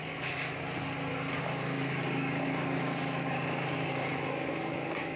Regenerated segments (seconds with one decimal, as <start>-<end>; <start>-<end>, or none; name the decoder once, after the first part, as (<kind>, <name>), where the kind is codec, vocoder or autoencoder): 1.1-4.0 (codec, DAC); 4.5-5.2